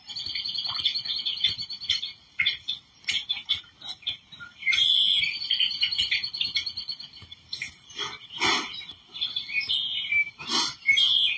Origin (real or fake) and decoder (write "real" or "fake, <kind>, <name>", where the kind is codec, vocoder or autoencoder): fake, vocoder, BigVGAN v2